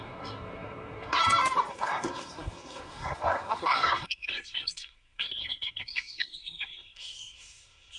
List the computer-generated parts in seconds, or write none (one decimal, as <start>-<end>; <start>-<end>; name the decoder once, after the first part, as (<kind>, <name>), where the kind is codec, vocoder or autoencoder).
0.0-1.2 (codec, SNAC); 1.7-8.0